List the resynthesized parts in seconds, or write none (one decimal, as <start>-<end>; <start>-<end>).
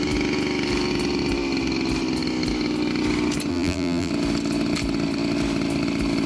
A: 3.5-4.1